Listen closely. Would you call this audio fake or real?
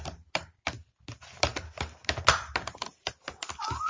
real